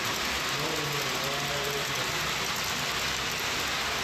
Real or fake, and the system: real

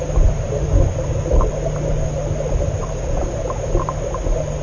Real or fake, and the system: real